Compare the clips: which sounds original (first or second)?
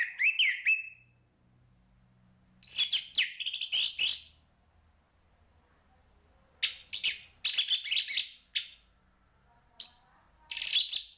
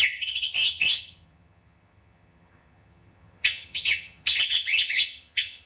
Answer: first